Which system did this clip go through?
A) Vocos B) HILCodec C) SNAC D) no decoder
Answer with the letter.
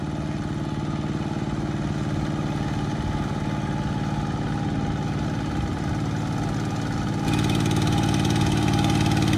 D